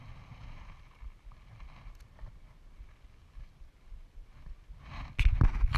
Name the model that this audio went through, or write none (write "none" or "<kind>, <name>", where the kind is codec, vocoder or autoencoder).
none